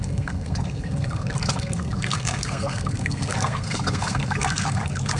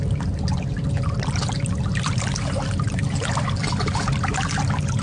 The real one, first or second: second